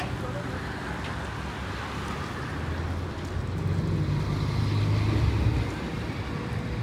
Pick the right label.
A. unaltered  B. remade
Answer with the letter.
A